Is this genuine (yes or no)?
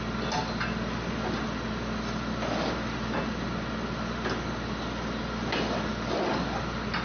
yes